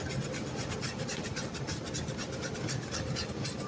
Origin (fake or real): real